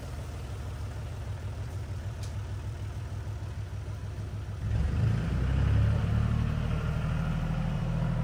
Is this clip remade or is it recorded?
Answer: remade